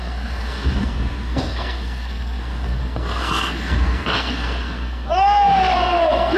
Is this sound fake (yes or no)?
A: yes